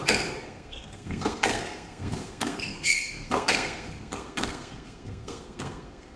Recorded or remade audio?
remade